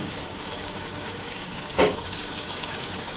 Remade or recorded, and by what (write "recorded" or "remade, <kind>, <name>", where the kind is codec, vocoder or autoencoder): remade, codec, DAC